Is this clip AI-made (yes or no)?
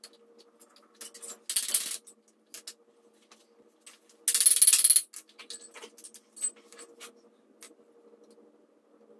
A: no